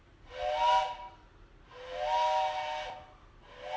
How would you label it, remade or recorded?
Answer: recorded